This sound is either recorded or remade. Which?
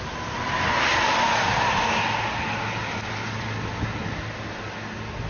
recorded